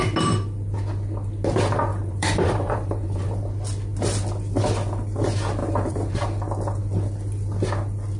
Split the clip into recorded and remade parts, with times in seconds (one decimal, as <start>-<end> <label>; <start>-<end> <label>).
0.0-1.9 recorded; 1.9-3.4 remade; 3.4-5.6 recorded; 5.6-6.1 remade; 6.1-8.2 recorded